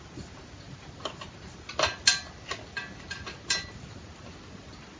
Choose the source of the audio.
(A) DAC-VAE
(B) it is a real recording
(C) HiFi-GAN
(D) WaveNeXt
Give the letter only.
B